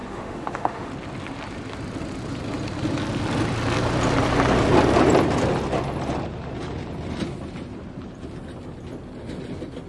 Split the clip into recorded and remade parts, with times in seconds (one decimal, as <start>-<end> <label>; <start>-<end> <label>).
0.0-0.9 remade; 0.9-9.9 recorded